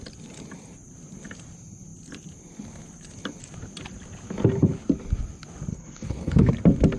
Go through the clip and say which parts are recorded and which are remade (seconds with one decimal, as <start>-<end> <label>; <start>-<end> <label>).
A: 0.0-5.7 recorded; 5.7-6.5 remade; 6.5-7.0 recorded

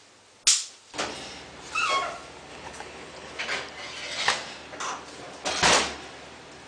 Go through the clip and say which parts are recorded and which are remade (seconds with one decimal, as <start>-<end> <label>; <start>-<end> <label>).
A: 0.0-2.5 recorded; 2.5-3.4 remade; 3.4-6.7 recorded

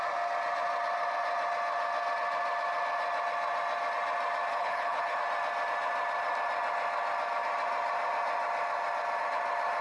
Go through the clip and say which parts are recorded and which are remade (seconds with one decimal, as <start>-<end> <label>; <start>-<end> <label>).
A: 0.0-4.5 recorded; 4.5-5.2 remade; 5.2-9.8 recorded

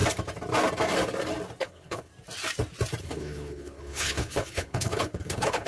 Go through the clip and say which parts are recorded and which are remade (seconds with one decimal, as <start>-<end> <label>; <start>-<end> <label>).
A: 0.0-1.6 recorded; 1.6-2.1 remade; 2.1-3.0 recorded; 3.0-5.7 remade

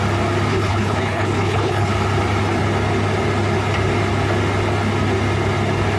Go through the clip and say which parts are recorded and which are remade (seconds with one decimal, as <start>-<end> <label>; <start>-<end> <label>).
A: 0.0-0.5 recorded; 0.5-1.9 remade; 1.9-6.0 recorded

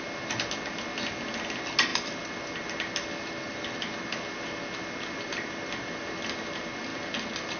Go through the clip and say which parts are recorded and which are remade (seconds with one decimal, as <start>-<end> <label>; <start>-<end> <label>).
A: 0.0-7.6 recorded